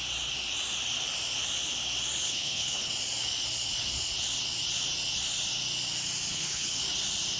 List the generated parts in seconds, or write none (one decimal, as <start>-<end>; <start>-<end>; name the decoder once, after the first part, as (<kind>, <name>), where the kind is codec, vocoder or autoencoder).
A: 2.2-2.9 (codec, HILCodec); 6.3-6.8